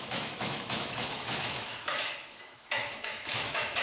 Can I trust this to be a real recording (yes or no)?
no